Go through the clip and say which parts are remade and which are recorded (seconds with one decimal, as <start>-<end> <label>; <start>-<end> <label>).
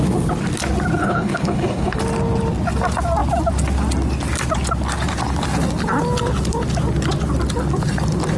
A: 0.0-1.0 recorded; 1.0-2.0 remade; 2.0-8.4 recorded